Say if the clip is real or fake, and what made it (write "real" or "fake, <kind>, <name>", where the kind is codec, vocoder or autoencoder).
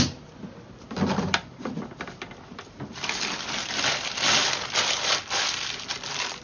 real